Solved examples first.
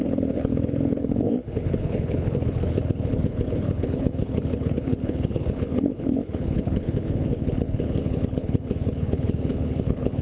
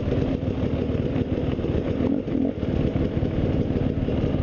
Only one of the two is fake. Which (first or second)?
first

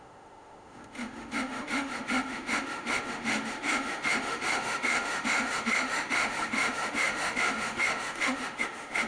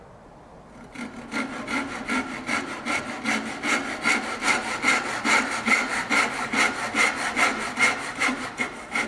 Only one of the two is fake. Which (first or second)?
first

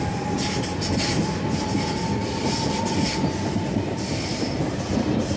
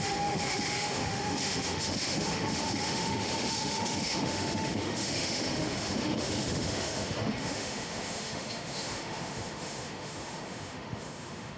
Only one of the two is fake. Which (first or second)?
second